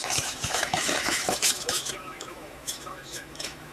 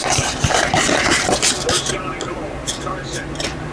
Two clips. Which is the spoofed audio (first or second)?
first